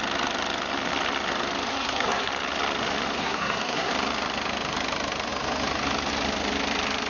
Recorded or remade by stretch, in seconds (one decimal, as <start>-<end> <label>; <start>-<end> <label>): 0.0-1.7 recorded; 1.7-2.3 remade; 2.3-3.2 recorded; 3.2-3.9 remade; 3.9-7.1 recorded